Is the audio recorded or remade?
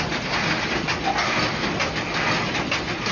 recorded